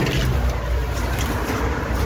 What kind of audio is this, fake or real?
real